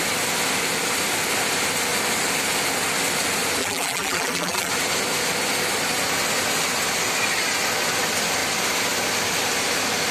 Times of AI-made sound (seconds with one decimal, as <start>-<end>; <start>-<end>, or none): 3.6-4.7